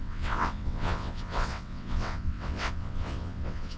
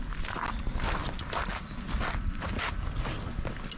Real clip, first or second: second